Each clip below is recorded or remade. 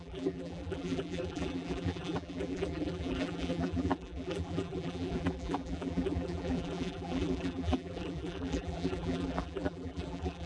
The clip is remade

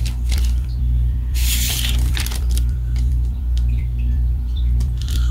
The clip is remade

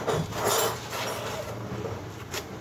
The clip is recorded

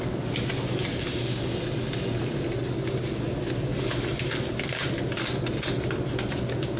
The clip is recorded